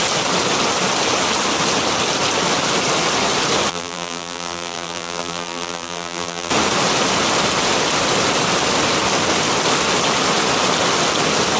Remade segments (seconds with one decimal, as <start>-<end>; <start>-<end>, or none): 3.7-6.5

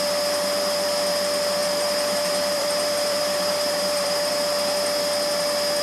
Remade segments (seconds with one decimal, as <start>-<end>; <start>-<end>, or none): 1.6-4.3

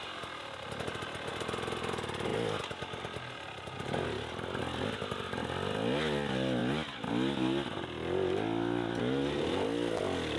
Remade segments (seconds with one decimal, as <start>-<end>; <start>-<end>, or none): none

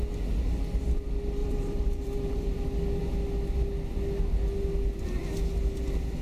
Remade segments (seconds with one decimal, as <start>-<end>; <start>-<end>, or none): 1.4-2.6

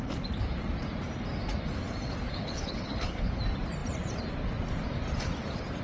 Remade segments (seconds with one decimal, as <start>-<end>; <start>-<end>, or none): 2.3-3.4

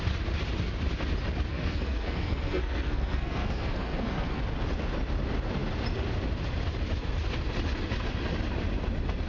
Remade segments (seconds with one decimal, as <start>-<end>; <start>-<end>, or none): 1.5-4.4

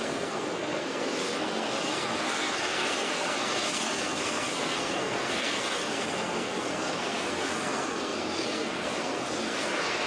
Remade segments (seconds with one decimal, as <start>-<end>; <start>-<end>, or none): 0.0-10.1

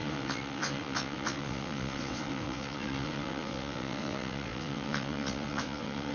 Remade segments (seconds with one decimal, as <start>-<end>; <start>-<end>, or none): 0.0-6.1